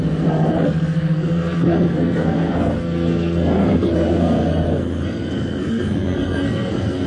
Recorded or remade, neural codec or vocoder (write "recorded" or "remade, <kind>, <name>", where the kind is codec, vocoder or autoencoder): remade, codec, SNAC